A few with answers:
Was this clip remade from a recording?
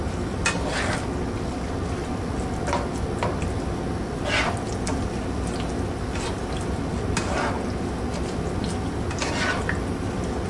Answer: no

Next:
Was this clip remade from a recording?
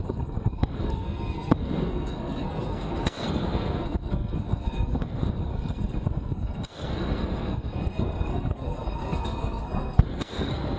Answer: yes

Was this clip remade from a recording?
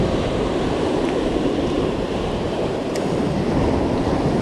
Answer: yes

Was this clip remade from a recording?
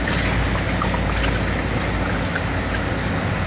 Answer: no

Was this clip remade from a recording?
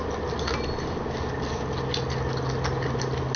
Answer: no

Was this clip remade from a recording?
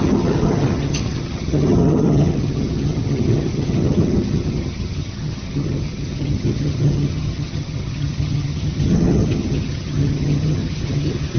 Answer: yes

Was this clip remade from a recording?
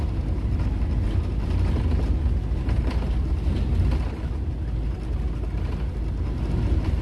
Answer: no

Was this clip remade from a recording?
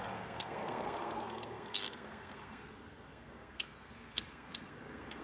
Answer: yes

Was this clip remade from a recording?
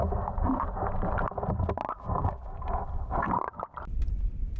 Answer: no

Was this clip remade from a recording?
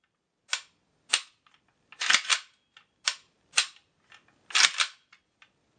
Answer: no